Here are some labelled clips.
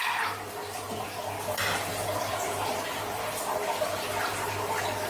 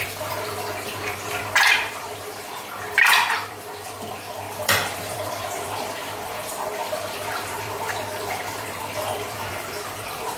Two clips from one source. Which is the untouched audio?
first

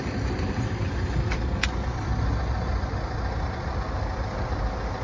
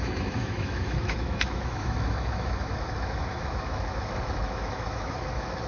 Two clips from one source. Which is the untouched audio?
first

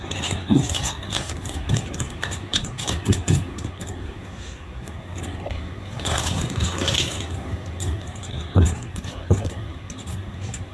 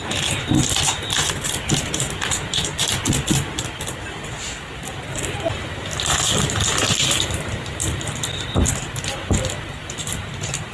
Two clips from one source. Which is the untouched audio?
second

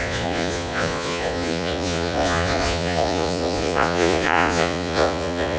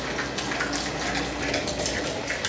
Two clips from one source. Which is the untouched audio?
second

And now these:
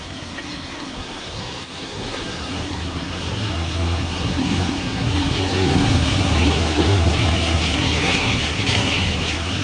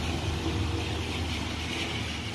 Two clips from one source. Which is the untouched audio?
second